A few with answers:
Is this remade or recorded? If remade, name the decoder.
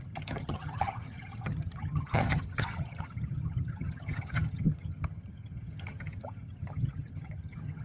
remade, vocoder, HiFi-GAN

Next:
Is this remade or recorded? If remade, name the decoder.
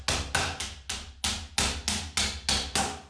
recorded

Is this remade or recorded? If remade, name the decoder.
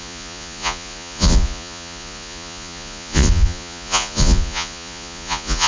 remade, vocoder, Vocos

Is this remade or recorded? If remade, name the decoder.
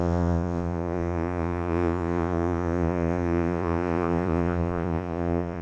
remade, vocoder, Vocos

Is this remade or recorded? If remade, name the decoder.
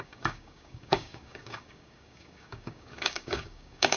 remade, codec, DAC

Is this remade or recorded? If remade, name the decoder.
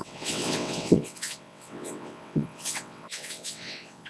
remade, vocoder, WaveNeXt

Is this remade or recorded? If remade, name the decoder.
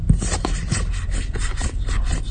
recorded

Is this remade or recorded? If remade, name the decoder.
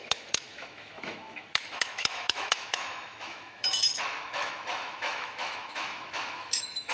remade, autoencoder, DAC-VAE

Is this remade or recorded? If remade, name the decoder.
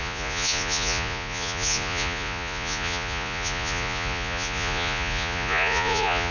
remade, vocoder, Vocos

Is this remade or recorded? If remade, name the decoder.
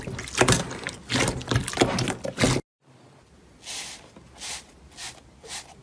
recorded